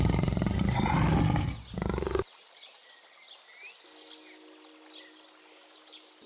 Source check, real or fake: real